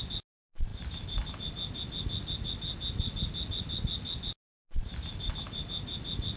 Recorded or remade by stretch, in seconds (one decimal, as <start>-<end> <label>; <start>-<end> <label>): 0.0-6.4 recorded